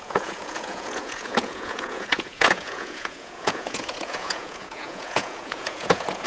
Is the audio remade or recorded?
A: remade